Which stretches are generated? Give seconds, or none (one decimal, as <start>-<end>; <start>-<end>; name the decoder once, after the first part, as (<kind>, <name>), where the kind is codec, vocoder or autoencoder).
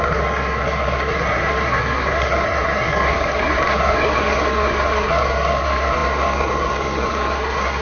0.0-7.8 (codec, SNAC)